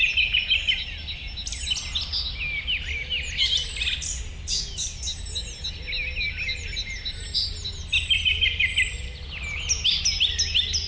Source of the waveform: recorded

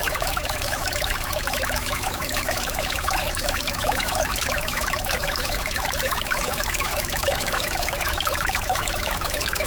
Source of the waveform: remade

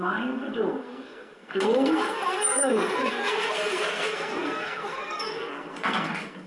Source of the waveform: remade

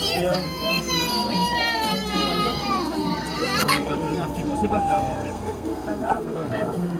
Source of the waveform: remade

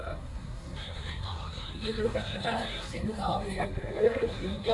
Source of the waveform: remade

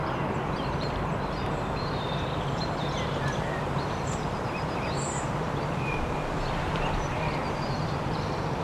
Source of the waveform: remade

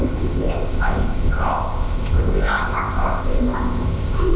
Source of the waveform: remade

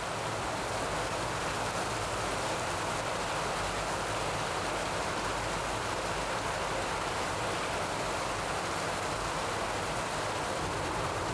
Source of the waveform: recorded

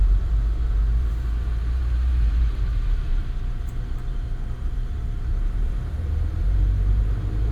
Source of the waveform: remade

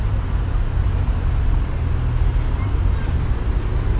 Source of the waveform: recorded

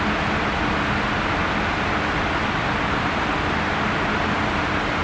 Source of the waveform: remade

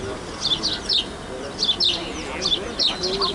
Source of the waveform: recorded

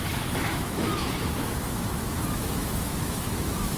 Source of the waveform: remade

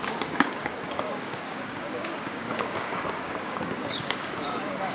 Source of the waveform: remade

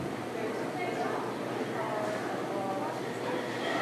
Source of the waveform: recorded